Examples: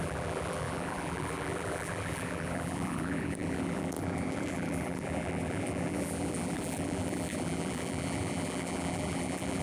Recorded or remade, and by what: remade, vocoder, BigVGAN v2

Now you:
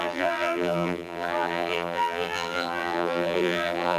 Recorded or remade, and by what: remade, vocoder, BigVGAN v2